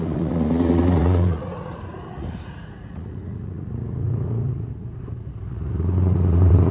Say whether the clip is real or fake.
fake